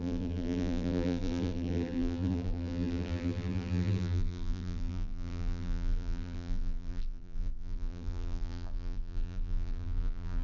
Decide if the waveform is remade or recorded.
remade